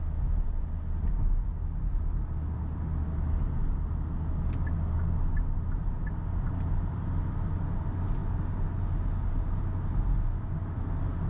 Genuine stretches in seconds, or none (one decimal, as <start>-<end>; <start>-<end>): 0.0-11.3